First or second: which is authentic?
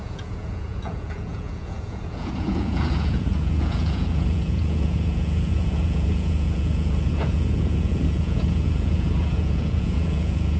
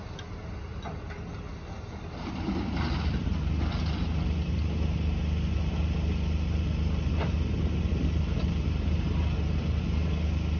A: second